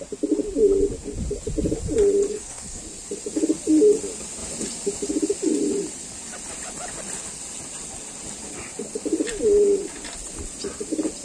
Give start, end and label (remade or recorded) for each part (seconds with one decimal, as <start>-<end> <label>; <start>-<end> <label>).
0.0-2.3 recorded; 2.3-2.8 remade; 2.8-11.2 recorded